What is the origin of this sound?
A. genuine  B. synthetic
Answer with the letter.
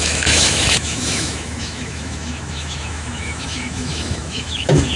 B